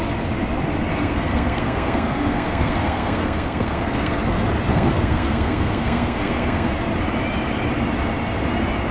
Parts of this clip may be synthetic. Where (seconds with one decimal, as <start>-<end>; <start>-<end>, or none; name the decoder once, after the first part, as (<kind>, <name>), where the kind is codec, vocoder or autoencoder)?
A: 0.9-4.2 (codec, SNAC); 4.7-6.7

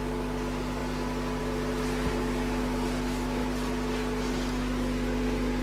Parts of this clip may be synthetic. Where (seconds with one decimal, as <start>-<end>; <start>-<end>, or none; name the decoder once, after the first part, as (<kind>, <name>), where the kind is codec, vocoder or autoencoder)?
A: 3.4-4.3 (vocoder, BigVGAN v2)